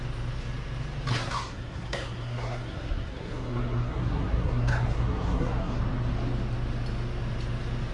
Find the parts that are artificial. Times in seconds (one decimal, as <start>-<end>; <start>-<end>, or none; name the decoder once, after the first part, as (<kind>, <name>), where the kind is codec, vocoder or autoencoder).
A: 1.1-5.8 (codec, SNAC)